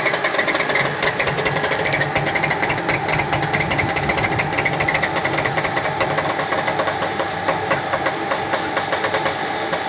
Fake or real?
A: real